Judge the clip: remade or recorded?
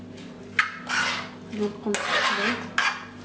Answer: recorded